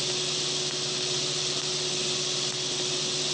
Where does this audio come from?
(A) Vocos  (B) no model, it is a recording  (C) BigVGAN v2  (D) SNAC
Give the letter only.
B